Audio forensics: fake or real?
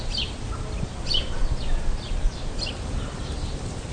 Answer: real